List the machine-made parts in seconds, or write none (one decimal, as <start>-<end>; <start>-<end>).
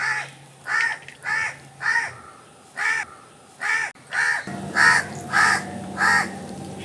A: none